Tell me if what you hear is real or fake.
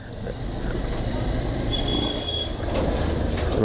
real